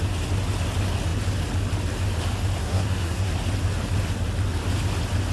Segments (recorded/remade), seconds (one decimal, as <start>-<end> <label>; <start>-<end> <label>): 0.0-2.6 recorded; 2.6-3.3 remade; 3.3-5.3 recorded